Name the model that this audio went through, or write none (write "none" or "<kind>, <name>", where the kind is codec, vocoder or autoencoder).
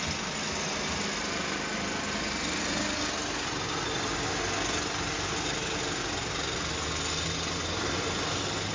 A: none